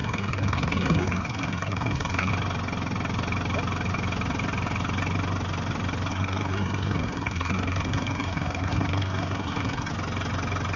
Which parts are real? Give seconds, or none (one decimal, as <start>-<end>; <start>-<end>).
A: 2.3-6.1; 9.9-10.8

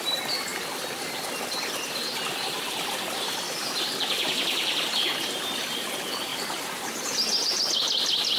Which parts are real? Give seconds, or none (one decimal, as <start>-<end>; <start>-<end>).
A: none

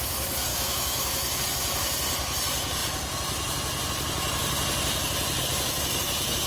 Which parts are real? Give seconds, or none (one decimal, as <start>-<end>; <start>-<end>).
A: 0.0-0.5; 1.4-6.5

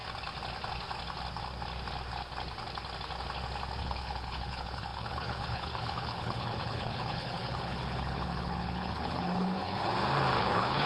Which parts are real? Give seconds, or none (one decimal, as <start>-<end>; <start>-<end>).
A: 0.0-3.8; 9.9-10.4